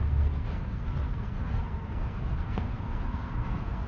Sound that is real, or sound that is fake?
fake